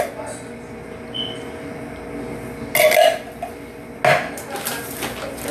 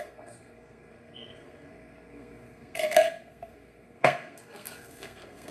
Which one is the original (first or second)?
first